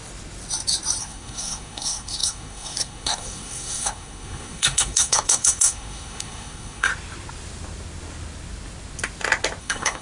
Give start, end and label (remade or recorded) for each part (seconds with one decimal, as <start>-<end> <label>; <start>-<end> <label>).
0.0-1.0 recorded; 1.0-6.9 remade; 6.9-9.6 recorded; 9.6-10.0 remade